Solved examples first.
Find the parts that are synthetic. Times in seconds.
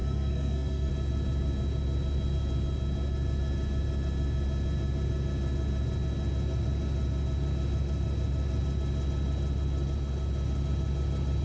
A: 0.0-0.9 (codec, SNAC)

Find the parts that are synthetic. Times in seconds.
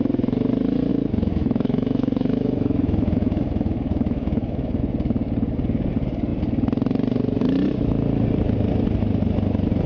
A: 0.9-4.8 (autoencoder, DAC-VAE)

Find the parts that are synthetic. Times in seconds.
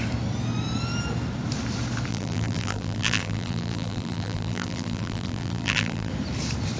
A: 2.1-6.1 (vocoder, BigVGAN v2)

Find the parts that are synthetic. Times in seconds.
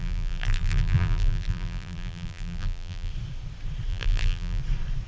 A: 0.0-3.1 (vocoder, BigVGAN v2); 3.9-4.6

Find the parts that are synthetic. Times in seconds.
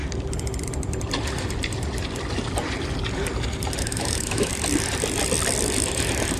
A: 3.8-4.5 (autoencoder, DAC-VAE)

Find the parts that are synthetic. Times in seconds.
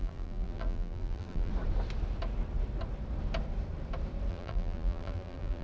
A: 0.0-1.5 (vocoder, BigVGAN v2); 4.3-5.6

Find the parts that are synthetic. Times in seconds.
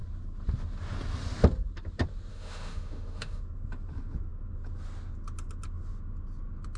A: 2.3-3.4 (autoencoder, DAC-VAE)